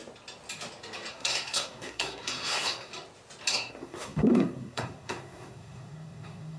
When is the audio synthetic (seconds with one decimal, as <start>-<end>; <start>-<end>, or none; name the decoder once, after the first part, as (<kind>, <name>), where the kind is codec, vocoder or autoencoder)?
1.1-2.9 (codec, SNAC); 3.5-6.6

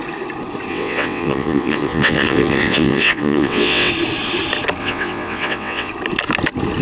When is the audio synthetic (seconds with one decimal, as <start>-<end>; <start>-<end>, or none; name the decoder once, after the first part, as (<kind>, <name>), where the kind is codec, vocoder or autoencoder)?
0.7-3.9 (vocoder, WaveNeXt); 4.8-5.9

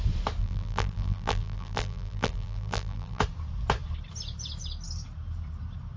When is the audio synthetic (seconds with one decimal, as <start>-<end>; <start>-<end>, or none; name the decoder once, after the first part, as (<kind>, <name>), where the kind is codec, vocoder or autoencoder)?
0.4-3.2 (vocoder, BigVGAN v2)

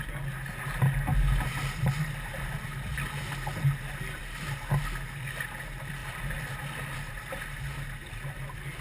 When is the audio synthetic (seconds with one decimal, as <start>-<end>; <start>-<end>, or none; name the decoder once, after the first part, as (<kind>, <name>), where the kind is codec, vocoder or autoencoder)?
6.0-7.3 (vocoder, BigVGAN v2)

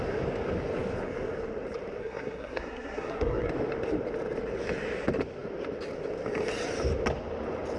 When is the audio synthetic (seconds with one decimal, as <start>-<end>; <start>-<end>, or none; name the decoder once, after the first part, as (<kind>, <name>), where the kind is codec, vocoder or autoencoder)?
2.0-3.5 (codec, SNAC)

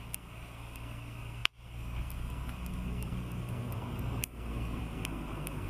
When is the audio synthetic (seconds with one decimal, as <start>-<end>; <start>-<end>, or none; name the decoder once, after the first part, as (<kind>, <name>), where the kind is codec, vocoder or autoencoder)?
0.0-5.7 (codec, SNAC)

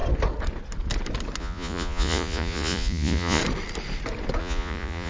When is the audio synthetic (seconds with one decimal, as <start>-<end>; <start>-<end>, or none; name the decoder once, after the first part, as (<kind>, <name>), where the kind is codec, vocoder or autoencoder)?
1.4-3.4 (vocoder, Vocos); 4.4-5.1

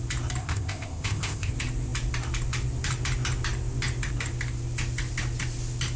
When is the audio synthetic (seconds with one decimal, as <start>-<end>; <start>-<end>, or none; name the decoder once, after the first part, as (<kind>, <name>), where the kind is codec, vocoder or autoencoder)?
0.4-1.5 (codec, ZipCodec)